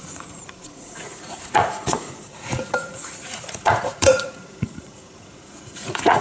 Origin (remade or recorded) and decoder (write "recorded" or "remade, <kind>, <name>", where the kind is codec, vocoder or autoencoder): remade, vocoder, Vocos